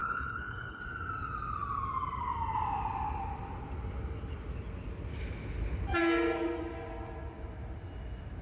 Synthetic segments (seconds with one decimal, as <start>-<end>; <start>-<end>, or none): 0.0-0.8